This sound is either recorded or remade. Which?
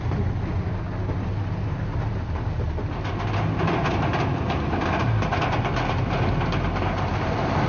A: recorded